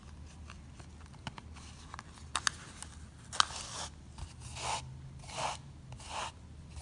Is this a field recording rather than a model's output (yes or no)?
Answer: yes